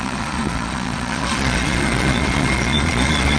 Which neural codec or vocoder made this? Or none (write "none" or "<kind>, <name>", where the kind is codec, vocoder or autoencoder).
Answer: vocoder, Vocos